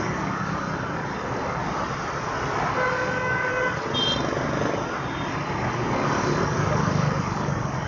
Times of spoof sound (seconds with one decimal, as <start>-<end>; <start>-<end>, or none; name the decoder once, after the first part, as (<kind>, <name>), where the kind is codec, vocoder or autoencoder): 0.0-1.6 (codec, DAC); 2.7-3.5; 5.3-7.9